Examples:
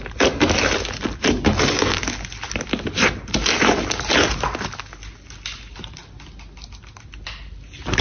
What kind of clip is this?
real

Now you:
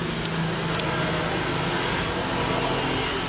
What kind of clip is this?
real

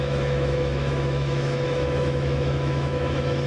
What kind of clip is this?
fake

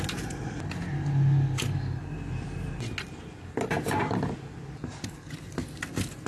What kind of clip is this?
real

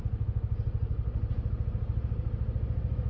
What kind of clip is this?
real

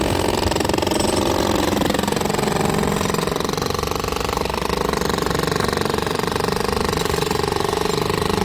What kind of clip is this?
real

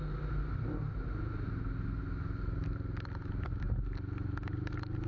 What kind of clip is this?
real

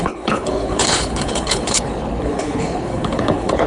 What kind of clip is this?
fake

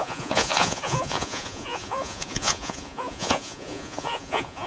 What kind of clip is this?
fake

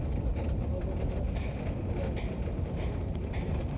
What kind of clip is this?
real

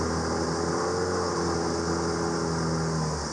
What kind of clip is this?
real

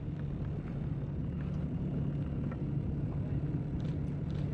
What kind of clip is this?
real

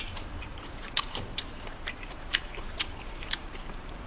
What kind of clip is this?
fake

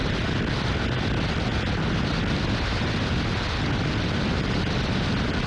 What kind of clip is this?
real